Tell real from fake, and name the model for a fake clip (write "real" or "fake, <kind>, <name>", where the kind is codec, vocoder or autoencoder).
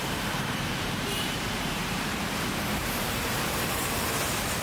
fake, vocoder, BigVGAN v2